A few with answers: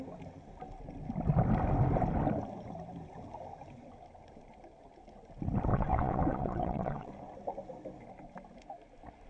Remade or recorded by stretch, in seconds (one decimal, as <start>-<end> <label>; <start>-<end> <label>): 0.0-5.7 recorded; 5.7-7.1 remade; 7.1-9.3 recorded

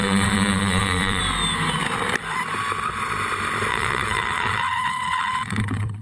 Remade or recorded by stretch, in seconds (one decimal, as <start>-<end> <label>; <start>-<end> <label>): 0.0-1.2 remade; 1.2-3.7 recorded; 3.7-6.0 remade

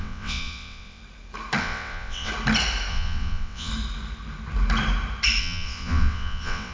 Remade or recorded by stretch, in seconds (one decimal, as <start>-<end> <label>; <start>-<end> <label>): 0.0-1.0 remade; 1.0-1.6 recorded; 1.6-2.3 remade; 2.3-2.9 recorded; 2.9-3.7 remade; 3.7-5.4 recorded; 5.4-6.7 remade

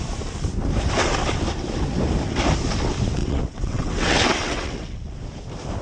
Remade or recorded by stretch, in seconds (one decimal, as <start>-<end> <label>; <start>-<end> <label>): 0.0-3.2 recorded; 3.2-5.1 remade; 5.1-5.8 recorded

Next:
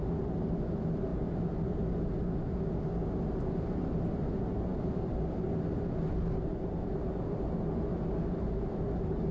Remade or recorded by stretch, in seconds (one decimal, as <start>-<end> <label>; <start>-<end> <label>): 0.0-9.3 recorded

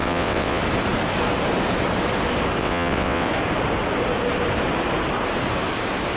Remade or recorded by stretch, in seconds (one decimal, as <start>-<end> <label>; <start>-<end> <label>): 0.0-0.6 remade; 0.6-2.6 recorded; 2.6-3.3 remade; 3.3-6.2 recorded

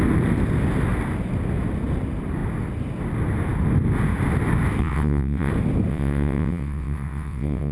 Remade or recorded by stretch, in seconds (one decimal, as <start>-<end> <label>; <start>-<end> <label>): 0.0-4.8 recorded; 4.8-5.5 remade; 5.5-5.9 recorded; 5.9-7.7 remade